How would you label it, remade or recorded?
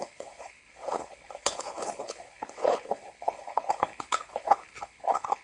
remade